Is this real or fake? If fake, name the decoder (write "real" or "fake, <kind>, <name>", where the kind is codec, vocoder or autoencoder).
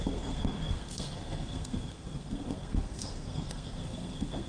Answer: fake, codec, SNAC